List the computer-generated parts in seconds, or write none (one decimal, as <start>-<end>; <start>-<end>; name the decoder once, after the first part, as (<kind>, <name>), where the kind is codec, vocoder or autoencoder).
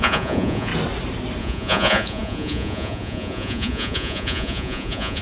0.0-0.7 (vocoder, Vocos); 1.4-5.2